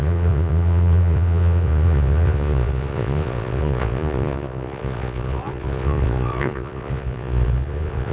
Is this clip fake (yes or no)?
yes